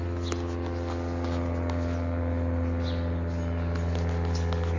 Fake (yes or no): no